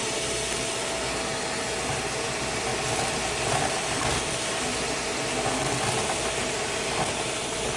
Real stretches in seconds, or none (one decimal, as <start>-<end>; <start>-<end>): 0.0-7.8